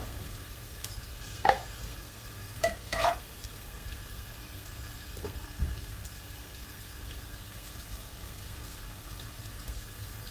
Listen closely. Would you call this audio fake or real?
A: fake